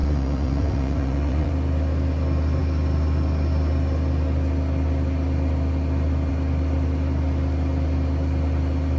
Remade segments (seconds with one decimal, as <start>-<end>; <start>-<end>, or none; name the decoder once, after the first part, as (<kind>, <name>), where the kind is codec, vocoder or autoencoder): 0.0-1.5 (vocoder, Vocos)